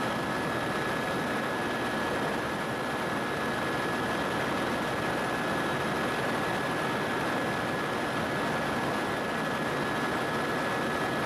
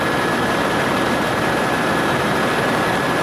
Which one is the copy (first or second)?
second